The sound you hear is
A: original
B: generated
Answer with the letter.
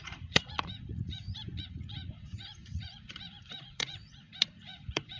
B